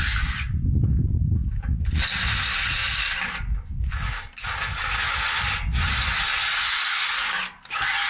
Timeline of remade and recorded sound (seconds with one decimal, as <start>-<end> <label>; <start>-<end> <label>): 0.0-8.1 recorded